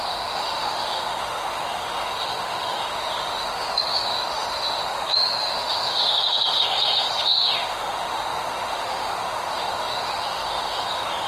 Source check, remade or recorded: remade